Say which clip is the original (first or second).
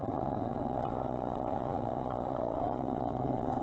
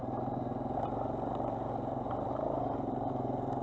second